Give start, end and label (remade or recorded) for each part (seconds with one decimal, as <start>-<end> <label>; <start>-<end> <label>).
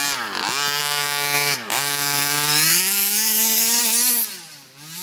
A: 0.0-0.8 recorded; 0.8-3.8 remade; 3.8-5.0 recorded